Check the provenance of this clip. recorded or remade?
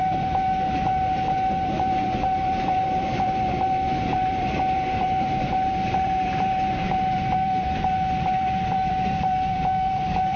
remade